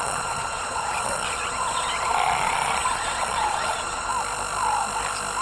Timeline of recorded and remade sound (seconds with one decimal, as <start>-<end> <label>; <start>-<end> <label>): 0.0-4.1 remade; 4.1-5.4 recorded